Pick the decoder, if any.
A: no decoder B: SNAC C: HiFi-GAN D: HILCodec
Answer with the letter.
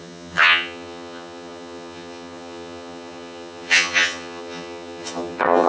C